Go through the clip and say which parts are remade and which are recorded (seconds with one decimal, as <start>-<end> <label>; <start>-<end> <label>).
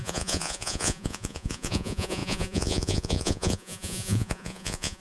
0.0-5.0 remade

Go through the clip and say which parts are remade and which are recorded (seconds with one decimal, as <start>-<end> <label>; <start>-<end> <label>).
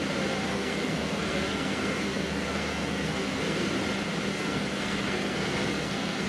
0.0-0.5 recorded; 0.5-3.7 remade; 3.7-4.3 recorded; 4.3-6.3 remade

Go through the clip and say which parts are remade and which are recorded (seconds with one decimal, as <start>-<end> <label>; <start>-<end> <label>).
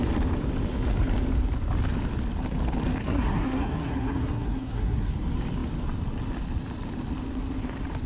0.0-3.0 recorded; 3.0-5.1 remade; 5.1-8.1 recorded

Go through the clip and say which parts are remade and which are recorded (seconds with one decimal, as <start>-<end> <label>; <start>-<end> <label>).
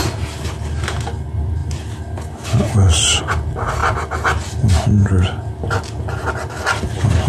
0.0-7.3 recorded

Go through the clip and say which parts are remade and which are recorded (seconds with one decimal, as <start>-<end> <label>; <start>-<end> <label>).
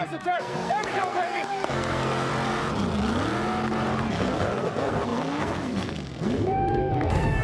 0.0-2.3 remade; 2.3-4.1 recorded; 4.1-7.4 remade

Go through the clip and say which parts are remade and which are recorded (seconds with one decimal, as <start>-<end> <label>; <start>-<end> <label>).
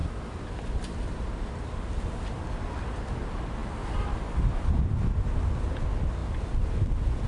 0.0-6.2 recorded; 6.2-7.3 remade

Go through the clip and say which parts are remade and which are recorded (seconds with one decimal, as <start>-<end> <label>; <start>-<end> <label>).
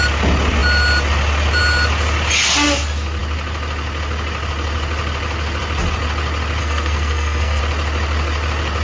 0.0-6.6 recorded; 6.6-7.6 remade; 7.6-8.8 recorded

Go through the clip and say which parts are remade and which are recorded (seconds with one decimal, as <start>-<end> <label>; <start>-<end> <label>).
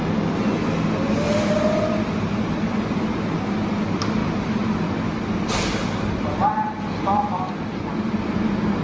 0.0-8.8 recorded